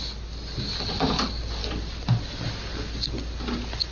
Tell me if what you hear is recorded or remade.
recorded